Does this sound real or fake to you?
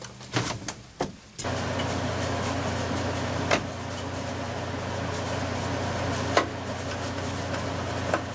real